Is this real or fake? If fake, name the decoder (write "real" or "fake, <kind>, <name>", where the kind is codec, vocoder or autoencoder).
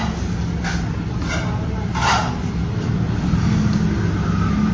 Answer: real